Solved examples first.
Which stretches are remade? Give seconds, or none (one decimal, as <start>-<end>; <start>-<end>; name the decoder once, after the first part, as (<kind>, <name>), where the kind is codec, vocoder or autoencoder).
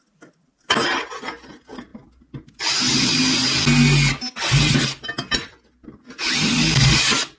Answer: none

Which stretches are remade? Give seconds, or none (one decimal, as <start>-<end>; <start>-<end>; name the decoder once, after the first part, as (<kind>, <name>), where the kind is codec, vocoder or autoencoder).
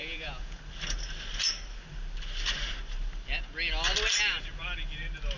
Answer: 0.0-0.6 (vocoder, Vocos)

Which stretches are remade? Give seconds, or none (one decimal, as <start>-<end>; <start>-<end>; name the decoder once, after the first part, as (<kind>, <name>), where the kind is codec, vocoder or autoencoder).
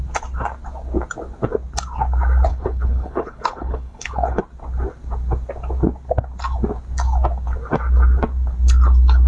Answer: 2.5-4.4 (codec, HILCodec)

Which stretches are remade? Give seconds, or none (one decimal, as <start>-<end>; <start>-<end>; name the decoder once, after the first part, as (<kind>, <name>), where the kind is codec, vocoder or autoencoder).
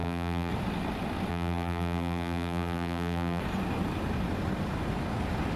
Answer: 0.0-0.5 (vocoder, BigVGAN v2); 1.3-3.4